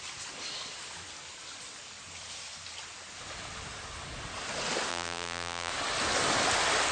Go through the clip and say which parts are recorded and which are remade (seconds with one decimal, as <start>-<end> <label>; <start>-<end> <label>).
0.0-4.9 recorded; 4.9-5.7 remade; 5.7-6.9 recorded